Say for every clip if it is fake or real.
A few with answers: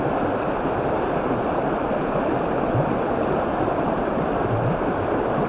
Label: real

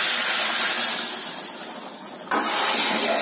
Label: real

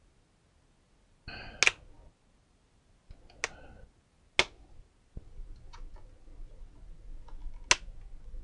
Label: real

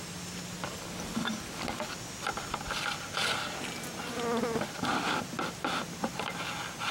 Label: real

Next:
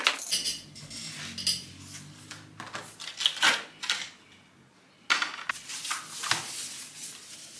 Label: real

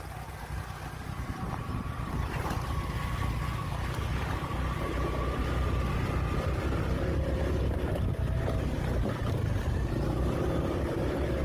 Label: real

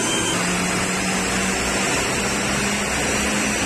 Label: real